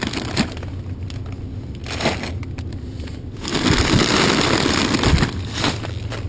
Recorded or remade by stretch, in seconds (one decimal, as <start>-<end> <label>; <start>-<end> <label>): 0.0-6.3 recorded